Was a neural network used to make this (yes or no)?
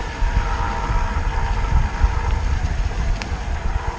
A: no